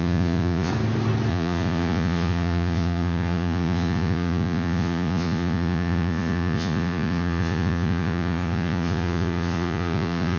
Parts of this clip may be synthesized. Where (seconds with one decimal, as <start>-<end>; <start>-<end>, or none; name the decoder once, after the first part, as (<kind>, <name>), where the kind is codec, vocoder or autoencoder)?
0.0-0.7 (vocoder, Vocos); 1.3-10.4